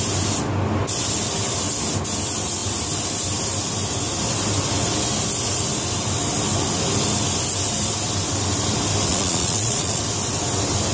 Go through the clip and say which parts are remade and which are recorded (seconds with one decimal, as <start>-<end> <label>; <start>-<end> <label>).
0.0-9.1 recorded; 9.1-10.0 remade; 10.0-10.9 recorded